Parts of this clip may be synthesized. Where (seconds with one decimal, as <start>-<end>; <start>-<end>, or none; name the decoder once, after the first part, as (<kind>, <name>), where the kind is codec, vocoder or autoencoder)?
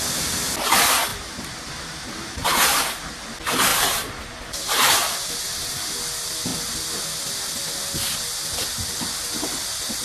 1.1-3.1 (vocoder, BigVGAN v2); 3.7-5.9